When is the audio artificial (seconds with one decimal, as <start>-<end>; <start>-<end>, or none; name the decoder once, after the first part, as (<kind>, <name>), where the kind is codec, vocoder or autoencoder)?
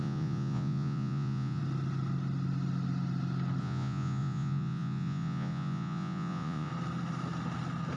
0.0-1.6 (vocoder, Vocos); 3.6-6.7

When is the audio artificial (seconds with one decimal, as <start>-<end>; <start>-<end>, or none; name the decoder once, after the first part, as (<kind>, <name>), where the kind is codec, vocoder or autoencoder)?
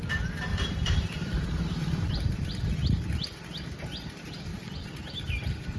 0.5-3.4 (vocoder, BigVGAN v2); 4.5-5.0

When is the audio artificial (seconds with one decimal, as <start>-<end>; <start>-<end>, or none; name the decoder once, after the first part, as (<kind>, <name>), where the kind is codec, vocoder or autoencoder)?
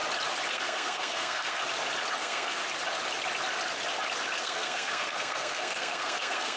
0.5-1.6 (codec, SNAC); 2.2-2.6; 4.4-6.6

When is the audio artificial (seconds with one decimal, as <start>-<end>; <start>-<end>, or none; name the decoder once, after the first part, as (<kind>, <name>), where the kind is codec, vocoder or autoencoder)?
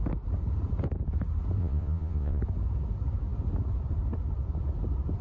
1.6-2.4 (vocoder, Vocos)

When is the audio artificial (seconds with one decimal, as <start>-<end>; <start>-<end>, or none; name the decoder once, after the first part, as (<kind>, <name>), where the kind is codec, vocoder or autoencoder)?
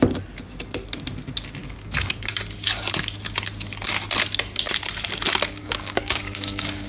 1.6-2.3 (codec, DAC); 5.6-6.9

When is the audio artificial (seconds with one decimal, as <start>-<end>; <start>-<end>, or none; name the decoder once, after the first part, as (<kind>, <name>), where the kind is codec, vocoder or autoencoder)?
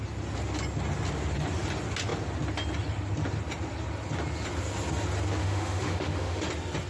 5.4-6.4 (autoencoder, DAC-VAE)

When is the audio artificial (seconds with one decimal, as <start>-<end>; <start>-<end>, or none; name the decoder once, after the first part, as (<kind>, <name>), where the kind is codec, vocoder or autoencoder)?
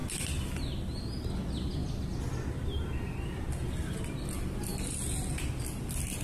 none